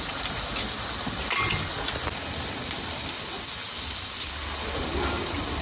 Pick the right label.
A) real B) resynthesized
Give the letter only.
A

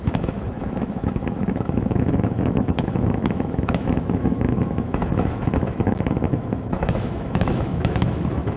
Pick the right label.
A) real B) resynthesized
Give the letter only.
B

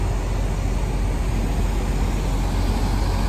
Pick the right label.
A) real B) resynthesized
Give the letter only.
A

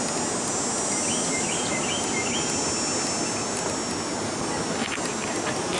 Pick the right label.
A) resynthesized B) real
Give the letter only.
B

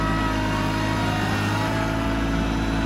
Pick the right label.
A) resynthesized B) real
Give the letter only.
B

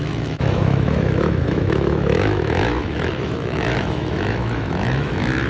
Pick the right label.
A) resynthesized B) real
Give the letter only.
A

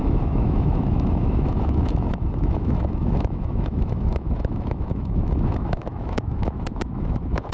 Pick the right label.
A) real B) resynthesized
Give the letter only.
B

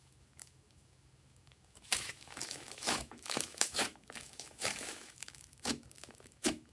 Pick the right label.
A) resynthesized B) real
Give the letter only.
A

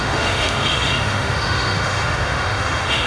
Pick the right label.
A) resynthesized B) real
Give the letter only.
A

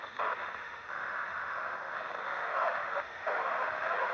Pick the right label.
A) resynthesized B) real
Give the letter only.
A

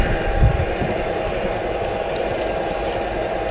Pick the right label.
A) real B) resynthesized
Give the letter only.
A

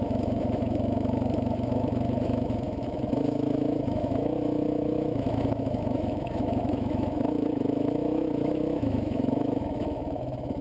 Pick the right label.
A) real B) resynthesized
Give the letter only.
B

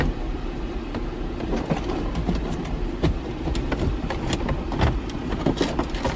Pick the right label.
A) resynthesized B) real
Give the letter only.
B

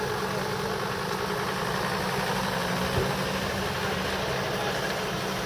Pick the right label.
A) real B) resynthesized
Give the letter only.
A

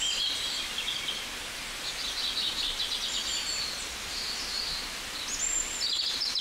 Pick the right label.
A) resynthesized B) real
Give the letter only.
B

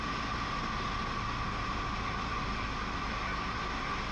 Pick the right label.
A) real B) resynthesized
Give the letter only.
A